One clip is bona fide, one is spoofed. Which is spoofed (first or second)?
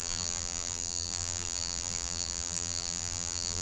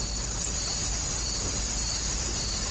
first